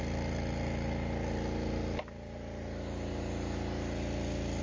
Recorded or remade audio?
recorded